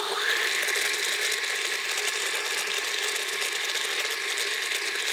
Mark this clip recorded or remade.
recorded